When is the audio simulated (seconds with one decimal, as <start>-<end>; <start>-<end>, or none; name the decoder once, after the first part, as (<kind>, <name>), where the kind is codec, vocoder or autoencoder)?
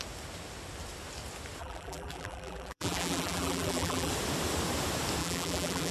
1.6-4.1 (vocoder, BigVGAN v2); 5.2-5.9